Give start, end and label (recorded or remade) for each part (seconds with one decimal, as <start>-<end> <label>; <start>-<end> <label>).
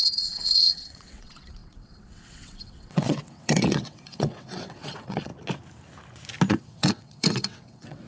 0.0-5.3 remade; 5.3-6.5 recorded; 6.5-8.1 remade